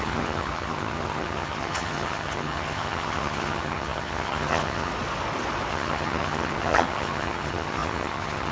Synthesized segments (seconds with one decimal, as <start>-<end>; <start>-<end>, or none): 0.0-4.9; 5.7-8.5